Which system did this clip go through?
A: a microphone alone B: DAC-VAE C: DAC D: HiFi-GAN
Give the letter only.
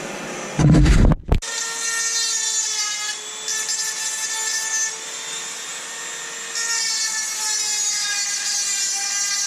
A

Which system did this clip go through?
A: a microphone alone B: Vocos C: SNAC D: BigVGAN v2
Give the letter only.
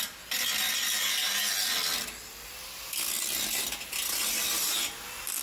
A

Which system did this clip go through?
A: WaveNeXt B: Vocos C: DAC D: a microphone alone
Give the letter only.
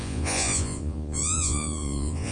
B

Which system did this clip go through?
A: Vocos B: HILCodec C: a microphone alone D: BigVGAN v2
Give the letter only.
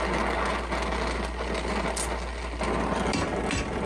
C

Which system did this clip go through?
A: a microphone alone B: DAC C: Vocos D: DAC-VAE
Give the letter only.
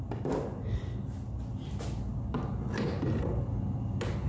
A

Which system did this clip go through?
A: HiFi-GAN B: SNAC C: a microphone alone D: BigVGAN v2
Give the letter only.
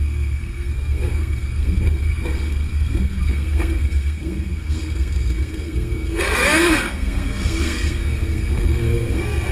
B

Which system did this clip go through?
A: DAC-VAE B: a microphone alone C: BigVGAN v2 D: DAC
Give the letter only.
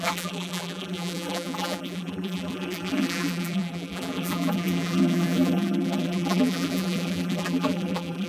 C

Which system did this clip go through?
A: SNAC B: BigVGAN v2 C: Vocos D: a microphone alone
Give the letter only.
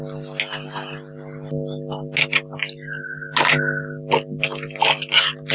D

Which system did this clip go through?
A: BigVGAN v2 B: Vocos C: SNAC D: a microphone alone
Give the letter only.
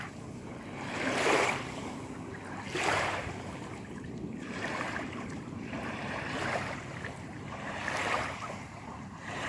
A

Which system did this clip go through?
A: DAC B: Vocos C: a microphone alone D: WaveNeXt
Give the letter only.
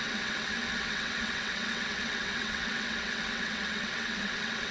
D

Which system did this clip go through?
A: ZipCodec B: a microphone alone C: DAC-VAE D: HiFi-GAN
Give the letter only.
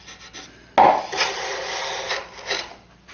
B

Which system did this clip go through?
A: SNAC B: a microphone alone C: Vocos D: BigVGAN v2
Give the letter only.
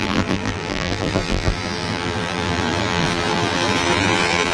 D